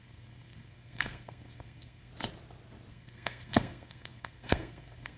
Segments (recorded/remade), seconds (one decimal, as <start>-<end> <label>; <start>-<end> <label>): 0.0-2.1 remade; 2.1-2.9 recorded; 2.9-5.2 remade